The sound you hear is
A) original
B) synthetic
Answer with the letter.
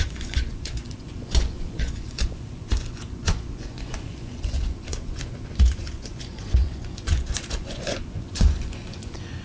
B